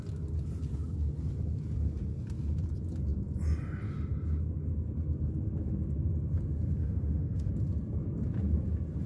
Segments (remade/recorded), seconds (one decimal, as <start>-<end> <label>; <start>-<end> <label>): 0.0-6.8 recorded; 6.8-7.5 remade; 7.5-9.1 recorded